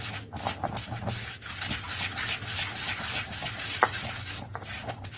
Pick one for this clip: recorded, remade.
recorded